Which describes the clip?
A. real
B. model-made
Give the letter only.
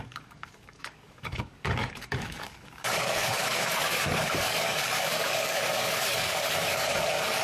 B